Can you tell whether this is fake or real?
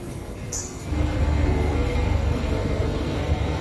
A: fake